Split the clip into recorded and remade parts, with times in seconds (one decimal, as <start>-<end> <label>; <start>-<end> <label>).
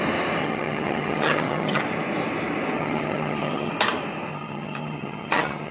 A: 0.0-0.4 recorded; 0.4-1.8 remade; 1.8-2.8 recorded; 2.8-3.7 remade; 3.7-4.3 recorded; 4.3-5.7 remade